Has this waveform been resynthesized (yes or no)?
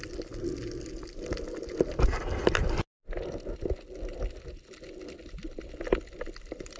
no